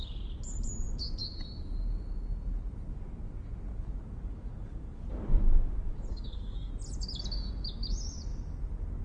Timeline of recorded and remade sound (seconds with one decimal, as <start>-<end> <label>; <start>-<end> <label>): 0.0-6.1 recorded; 6.1-6.7 remade; 6.7-9.0 recorded